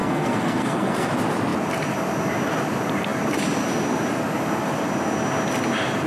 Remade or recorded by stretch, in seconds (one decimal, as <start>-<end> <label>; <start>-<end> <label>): 0.0-1.1 remade; 1.1-6.1 recorded